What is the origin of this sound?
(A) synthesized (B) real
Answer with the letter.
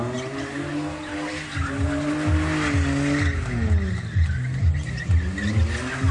B